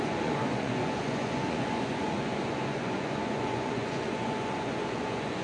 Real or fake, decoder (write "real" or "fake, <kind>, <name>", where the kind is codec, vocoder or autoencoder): fake, vocoder, Vocos